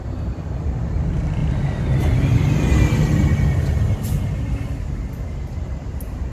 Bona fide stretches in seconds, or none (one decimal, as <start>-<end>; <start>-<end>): 0.0-6.3